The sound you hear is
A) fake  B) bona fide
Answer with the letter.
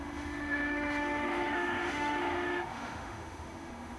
A